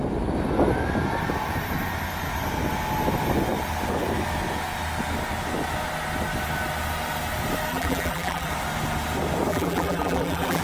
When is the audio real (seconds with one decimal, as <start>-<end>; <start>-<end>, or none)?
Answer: 0.0-7.7; 8.5-9.5